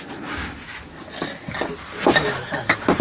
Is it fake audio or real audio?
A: real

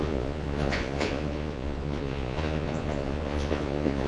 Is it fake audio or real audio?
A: fake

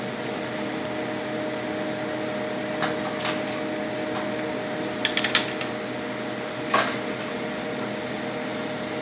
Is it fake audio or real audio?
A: real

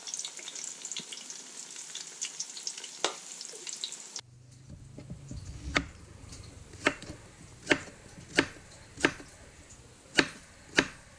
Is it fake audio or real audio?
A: real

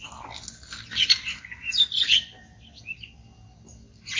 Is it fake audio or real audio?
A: real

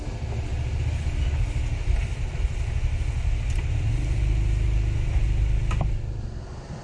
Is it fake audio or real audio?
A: real